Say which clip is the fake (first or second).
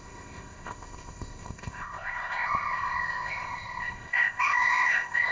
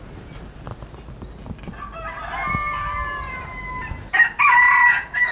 first